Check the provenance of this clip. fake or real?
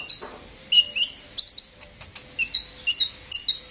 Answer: real